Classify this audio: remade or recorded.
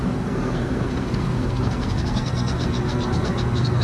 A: remade